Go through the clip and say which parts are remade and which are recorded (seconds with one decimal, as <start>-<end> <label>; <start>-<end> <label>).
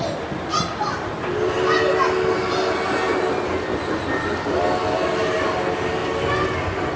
0.0-7.0 recorded